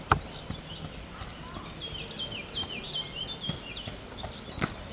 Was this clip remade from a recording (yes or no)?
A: no